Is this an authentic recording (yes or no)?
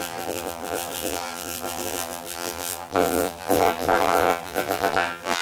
no